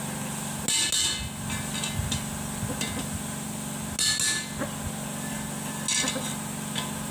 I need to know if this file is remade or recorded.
recorded